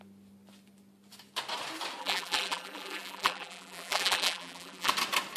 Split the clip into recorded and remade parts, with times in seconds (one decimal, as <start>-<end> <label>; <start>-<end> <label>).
0.0-2.0 recorded; 2.0-4.9 remade; 4.9-5.4 recorded

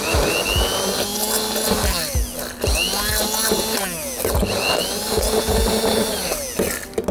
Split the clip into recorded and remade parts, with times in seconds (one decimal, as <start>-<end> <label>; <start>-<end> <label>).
0.0-7.1 recorded

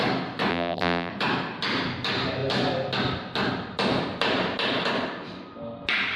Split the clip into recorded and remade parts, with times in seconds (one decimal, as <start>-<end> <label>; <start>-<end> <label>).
0.0-0.5 recorded; 0.5-1.1 remade; 1.1-6.2 recorded

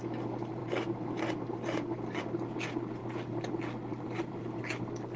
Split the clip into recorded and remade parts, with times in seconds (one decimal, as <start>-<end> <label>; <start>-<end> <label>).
0.0-3.9 recorded; 3.9-4.6 remade; 4.6-5.2 recorded

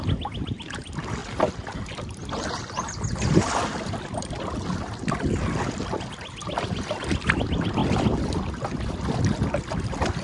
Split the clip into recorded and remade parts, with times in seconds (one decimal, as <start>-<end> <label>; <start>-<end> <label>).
0.0-1.2 remade; 1.2-6.1 recorded; 6.1-7.8 remade; 7.8-9.2 recorded; 9.2-10.2 remade

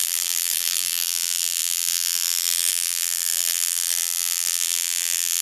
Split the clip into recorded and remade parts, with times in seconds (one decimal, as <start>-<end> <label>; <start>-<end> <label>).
0.0-5.4 remade